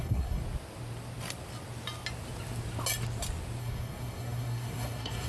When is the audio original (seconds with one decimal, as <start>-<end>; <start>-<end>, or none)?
0.4-3.6